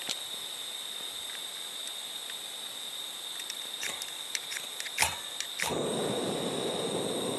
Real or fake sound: real